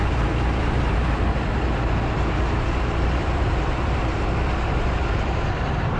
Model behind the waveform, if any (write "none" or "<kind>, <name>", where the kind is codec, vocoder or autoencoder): vocoder, BigVGAN v2